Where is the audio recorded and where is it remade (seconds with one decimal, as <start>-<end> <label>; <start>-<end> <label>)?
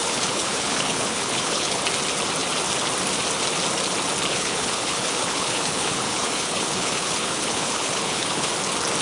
0.0-1.8 remade; 1.8-4.3 recorded; 4.3-8.5 remade; 8.5-9.0 recorded